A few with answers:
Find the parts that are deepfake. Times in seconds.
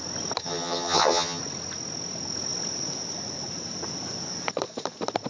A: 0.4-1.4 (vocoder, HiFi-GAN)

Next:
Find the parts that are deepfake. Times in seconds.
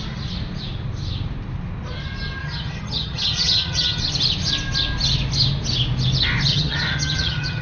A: 2.4-4.0 (vocoder, HiFi-GAN); 6.5-7.6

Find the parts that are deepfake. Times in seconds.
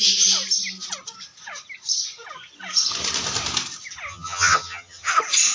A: 4.1-5.1 (vocoder, HiFi-GAN)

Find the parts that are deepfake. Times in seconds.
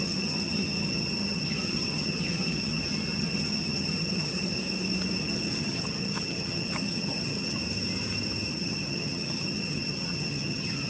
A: 0.0-4.6 (vocoder, HiFi-GAN); 5.2-7.6; 8.5-10.9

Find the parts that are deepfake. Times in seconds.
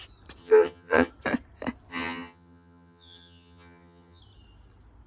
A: 0.4-1.1 (vocoder, HiFi-GAN); 1.9-4.2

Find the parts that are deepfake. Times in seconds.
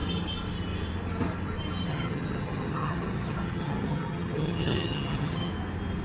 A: 1.9-5.5 (vocoder, HiFi-GAN)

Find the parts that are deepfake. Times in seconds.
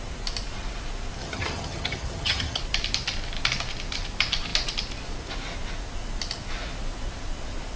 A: 1.2-2.6 (vocoder, HiFi-GAN)